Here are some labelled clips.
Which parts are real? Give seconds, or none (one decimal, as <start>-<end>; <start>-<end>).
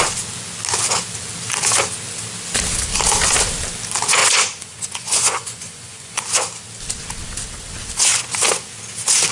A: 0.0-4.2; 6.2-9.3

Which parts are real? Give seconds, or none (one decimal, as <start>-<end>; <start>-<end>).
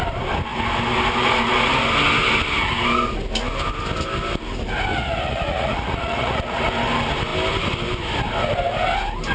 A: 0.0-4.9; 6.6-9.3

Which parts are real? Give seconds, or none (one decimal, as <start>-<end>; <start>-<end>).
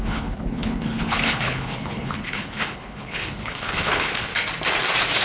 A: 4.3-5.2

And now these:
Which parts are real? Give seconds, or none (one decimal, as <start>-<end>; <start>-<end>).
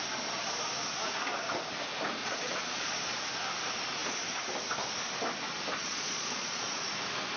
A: 0.0-2.2; 3.2-5.8; 6.9-7.4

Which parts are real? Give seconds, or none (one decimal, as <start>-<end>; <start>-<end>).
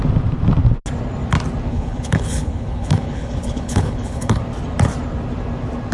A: 0.0-1.7; 4.4-5.9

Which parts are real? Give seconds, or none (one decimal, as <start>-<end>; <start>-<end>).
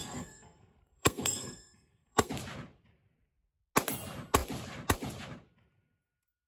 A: 2.3-6.5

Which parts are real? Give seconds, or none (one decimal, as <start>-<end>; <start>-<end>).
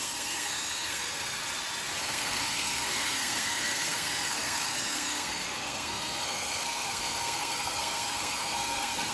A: 1.4-2.0